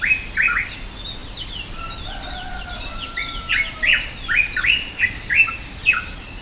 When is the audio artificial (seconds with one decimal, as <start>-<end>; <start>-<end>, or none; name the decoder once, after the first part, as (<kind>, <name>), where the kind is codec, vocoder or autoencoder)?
1.2-4.9 (vocoder, BigVGAN v2)